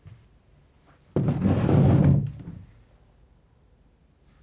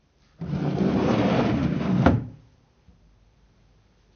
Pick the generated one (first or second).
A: second